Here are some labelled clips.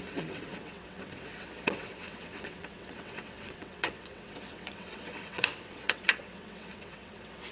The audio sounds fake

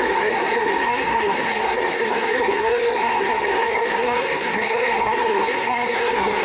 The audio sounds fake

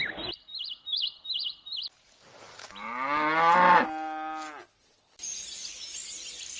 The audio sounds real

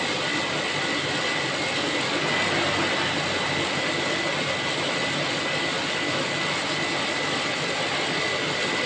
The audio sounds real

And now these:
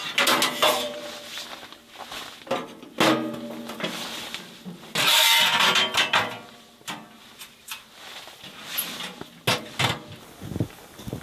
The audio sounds real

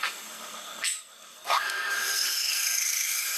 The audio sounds fake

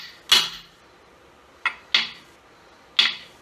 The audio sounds real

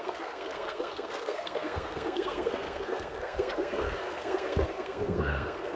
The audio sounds fake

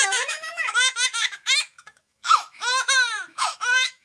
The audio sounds fake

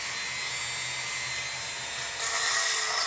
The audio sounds real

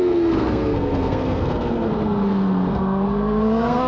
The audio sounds fake